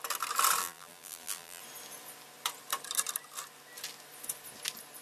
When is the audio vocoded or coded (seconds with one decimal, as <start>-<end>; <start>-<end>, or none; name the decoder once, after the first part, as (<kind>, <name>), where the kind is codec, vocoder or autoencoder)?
0.6-1.6 (vocoder, BigVGAN v2)